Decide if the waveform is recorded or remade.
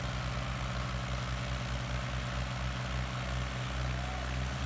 recorded